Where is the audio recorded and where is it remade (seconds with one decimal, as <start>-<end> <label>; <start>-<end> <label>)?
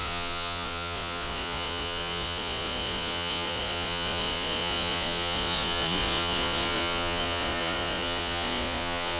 0.0-9.2 remade